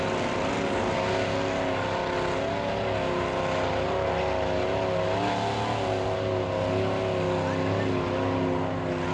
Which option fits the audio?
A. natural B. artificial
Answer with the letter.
A